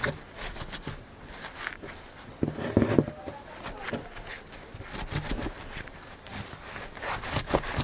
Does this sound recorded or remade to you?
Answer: recorded